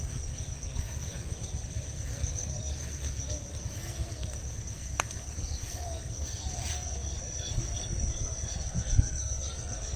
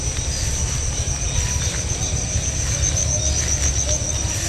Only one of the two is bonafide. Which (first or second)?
second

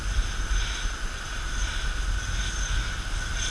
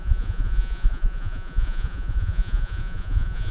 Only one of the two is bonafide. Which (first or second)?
first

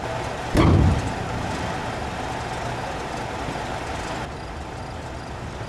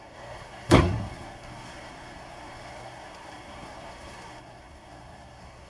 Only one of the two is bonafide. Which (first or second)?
first